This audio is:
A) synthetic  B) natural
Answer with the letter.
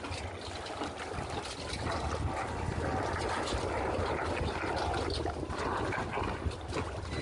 B